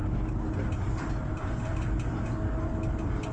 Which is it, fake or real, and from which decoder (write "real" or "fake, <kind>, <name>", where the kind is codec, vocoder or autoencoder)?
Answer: real